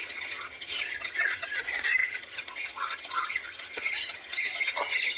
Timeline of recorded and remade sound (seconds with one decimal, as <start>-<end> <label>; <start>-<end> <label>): 0.0-1.6 remade; 1.6-2.0 recorded; 2.0-5.2 remade